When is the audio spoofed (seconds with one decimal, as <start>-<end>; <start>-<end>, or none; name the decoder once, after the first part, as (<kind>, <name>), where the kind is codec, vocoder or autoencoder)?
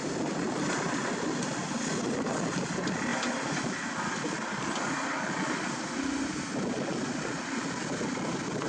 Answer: none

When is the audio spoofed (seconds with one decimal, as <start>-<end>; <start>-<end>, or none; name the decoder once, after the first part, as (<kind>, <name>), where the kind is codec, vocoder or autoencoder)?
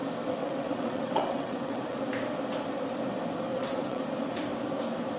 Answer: 0.4-2.0 (vocoder, WaveNeXt); 3.5-4.0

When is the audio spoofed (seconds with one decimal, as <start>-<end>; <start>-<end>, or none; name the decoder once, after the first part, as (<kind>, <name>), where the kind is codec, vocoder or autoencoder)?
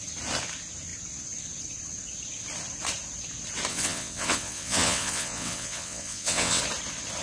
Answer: 3.7-6.6 (vocoder, WaveNeXt)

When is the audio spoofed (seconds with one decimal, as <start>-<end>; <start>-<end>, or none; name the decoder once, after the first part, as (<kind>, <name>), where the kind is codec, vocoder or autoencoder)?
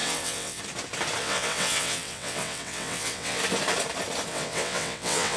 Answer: 0.0-0.6 (vocoder, WaveNeXt); 1.2-3.4; 4.3-5.4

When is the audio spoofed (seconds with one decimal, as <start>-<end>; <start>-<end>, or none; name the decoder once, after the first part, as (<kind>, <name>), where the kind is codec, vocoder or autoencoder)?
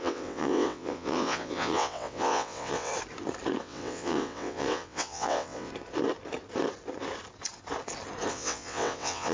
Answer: 0.0-2.9 (vocoder, WaveNeXt); 3.6-5.7; 8.3-9.3